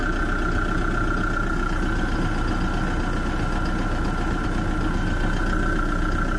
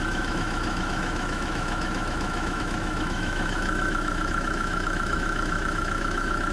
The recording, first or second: first